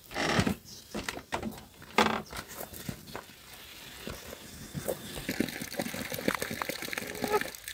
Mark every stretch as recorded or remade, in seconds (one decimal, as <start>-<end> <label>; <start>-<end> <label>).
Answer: 0.0-7.7 recorded